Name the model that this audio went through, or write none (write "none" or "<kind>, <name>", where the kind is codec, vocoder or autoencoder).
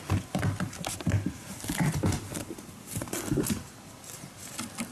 none